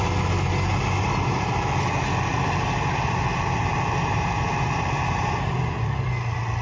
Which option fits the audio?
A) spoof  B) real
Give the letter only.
B